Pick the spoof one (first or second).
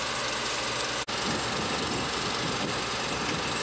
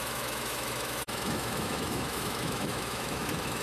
second